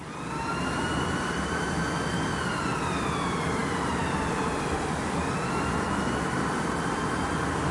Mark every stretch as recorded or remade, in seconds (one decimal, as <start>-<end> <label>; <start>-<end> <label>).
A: 0.0-7.7 recorded